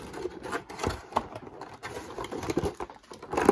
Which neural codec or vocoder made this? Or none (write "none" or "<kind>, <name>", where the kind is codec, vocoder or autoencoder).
none